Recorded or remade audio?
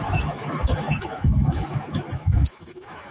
remade